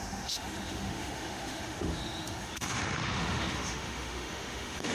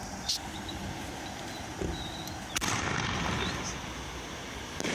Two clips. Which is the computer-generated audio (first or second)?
first